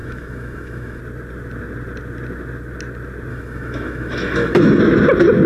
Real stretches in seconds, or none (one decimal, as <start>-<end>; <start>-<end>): 1.0-3.3; 4.8-5.5